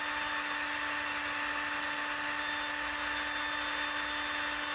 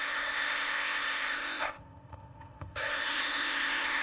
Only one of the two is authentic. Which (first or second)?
first